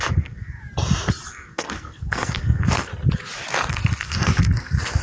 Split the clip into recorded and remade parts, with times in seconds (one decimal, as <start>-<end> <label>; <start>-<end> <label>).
0.0-0.6 remade; 0.6-1.3 recorded; 1.3-2.9 remade; 2.9-3.7 recorded; 3.7-5.0 remade